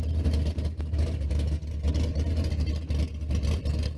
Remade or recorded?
recorded